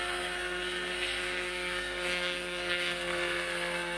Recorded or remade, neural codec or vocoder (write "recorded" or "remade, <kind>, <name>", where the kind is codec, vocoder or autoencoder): remade, codec, SNAC